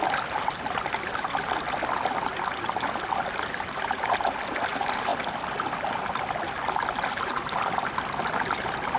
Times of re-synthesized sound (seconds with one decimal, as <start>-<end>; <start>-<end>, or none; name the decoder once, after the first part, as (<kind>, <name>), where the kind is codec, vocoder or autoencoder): none